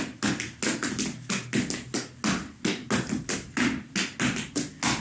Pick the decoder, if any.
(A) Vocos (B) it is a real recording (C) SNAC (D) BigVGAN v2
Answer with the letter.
B